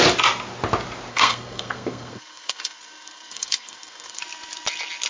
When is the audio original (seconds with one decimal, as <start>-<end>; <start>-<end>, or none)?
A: 0.0-1.1; 4.2-5.1